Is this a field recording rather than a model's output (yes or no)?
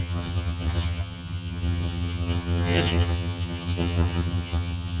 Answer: no